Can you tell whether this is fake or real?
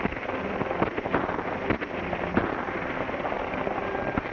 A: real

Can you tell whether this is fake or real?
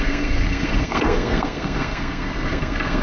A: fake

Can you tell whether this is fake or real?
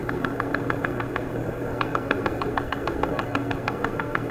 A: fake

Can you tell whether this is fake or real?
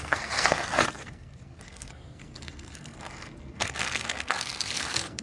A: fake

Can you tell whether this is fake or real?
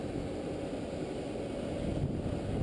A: real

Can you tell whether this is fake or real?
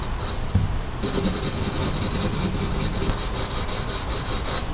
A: real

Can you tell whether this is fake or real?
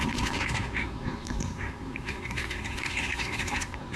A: fake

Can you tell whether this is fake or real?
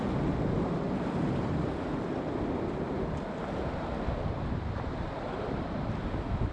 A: real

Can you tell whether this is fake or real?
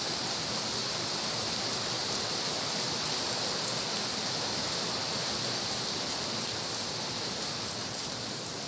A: real